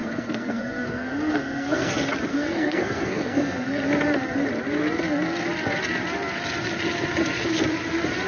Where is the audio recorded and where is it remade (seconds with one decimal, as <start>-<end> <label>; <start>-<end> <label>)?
0.0-1.9 remade; 1.9-2.3 recorded; 2.3-3.8 remade; 3.8-8.3 recorded